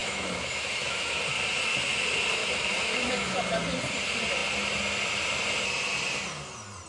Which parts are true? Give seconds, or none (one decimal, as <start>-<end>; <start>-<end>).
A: 1.2-2.4; 3.4-6.9